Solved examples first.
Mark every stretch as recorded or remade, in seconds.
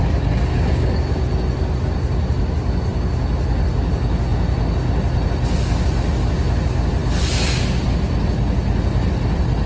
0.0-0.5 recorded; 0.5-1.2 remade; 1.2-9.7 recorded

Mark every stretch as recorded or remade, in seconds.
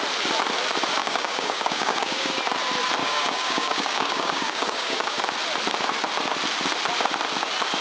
0.0-1.0 recorded; 1.0-2.4 remade; 2.4-3.0 recorded; 3.0-5.2 remade; 5.2-7.8 recorded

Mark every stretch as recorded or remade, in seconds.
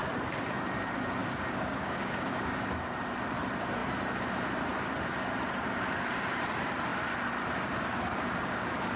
0.0-1.2 recorded; 1.2-2.7 remade; 2.7-9.0 recorded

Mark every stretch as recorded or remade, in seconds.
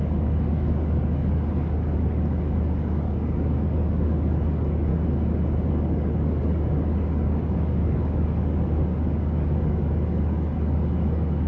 0.0-4.9 remade; 4.9-5.7 recorded; 5.7-11.5 remade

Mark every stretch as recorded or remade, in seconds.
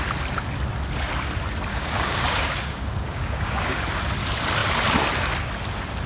0.0-1.7 recorded; 1.7-3.7 remade; 3.7-6.1 recorded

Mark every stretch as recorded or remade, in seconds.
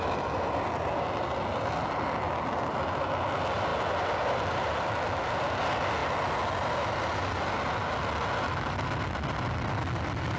0.0-10.4 recorded